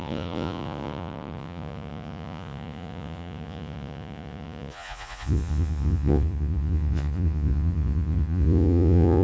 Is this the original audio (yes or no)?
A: no